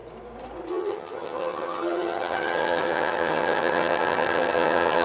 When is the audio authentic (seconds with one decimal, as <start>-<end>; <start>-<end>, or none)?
0.0-0.7